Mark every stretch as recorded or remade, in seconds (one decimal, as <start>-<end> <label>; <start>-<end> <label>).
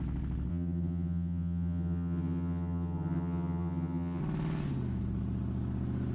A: 0.0-0.5 recorded; 0.5-4.2 remade; 4.2-6.1 recorded